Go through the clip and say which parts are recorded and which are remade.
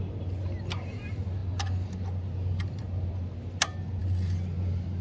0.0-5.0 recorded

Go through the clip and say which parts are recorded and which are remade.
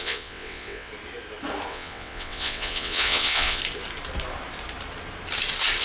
0.0-0.9 remade; 0.9-1.7 recorded; 1.7-3.6 remade; 3.6-5.8 recorded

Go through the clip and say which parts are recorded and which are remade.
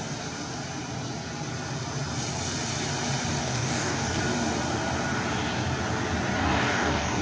0.0-3.4 recorded; 3.4-4.2 remade; 4.2-6.4 recorded; 6.4-7.2 remade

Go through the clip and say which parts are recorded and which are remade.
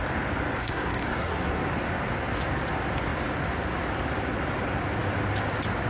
0.0-0.6 recorded; 0.6-1.6 remade; 1.6-5.9 recorded